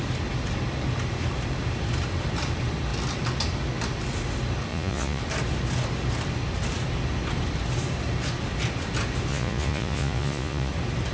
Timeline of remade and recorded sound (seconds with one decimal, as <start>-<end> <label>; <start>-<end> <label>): 0.0-4.7 recorded; 4.7-5.2 remade; 5.2-9.3 recorded; 9.3-10.7 remade; 10.7-11.1 recorded

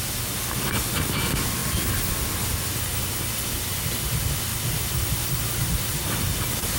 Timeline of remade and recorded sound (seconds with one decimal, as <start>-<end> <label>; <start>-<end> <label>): 0.0-6.8 recorded

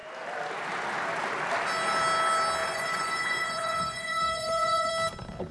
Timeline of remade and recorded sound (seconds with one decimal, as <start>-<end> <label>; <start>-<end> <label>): 0.0-2.6 recorded; 2.6-4.9 remade; 4.9-5.5 recorded